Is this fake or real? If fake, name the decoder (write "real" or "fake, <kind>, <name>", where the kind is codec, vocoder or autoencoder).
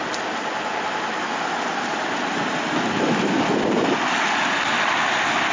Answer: real